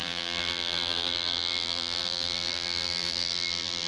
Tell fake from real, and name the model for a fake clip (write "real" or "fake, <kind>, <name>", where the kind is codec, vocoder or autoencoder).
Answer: fake, vocoder, BigVGAN v2